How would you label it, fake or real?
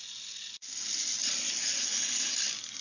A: real